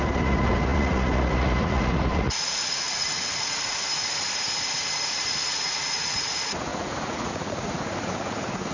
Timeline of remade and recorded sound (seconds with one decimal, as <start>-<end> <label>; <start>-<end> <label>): 0.0-3.9 remade; 3.9-5.3 recorded; 5.3-8.7 remade